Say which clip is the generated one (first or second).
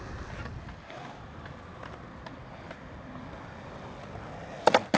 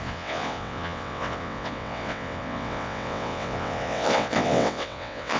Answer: second